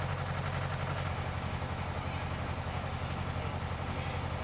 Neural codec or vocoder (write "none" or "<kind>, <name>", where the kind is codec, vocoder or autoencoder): none